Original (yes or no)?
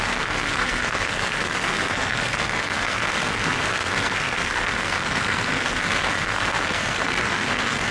no